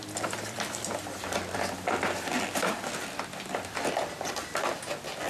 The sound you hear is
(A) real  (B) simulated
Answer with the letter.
B